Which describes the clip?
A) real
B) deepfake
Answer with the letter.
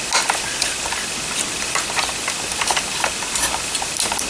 A